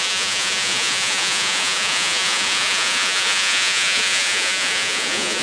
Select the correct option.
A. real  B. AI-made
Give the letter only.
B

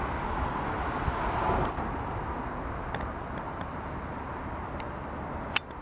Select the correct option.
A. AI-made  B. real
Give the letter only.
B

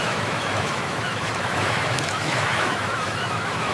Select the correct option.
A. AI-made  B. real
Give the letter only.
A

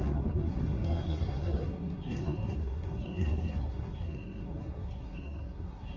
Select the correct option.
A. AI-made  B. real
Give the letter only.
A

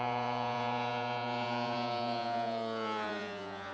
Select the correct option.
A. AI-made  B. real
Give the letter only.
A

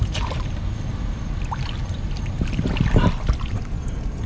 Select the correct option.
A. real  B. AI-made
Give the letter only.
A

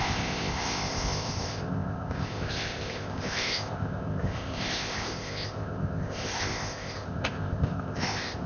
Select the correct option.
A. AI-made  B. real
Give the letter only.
A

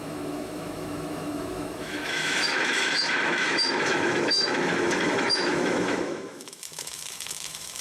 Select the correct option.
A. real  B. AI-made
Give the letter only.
B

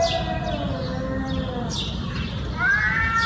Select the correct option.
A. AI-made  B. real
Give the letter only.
B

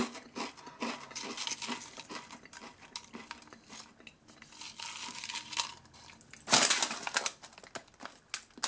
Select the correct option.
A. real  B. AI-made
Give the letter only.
A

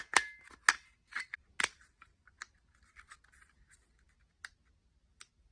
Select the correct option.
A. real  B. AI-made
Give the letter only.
A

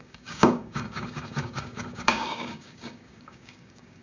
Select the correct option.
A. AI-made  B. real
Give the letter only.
A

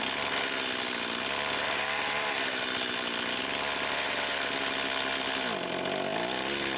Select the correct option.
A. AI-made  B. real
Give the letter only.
B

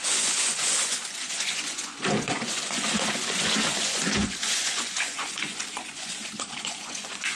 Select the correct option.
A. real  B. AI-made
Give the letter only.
B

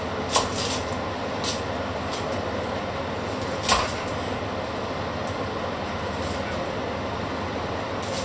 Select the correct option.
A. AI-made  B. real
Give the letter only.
B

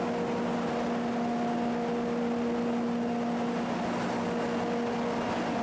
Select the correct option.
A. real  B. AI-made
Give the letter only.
A